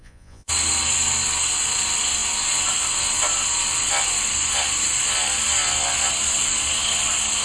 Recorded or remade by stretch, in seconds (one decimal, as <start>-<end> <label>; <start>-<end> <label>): 0.0-0.5 remade; 0.5-7.4 recorded

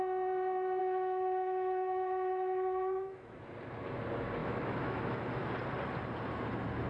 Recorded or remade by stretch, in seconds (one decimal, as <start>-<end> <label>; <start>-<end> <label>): 0.0-0.8 recorded; 0.8-3.4 remade; 3.4-4.4 recorded; 4.4-5.5 remade; 5.5-6.9 recorded

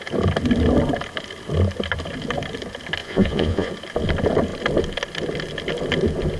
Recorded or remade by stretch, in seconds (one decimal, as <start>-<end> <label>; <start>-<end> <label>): 0.0-3.0 recorded; 3.0-3.7 remade; 3.7-6.4 recorded